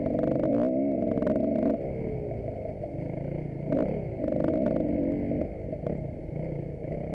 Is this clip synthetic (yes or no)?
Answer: yes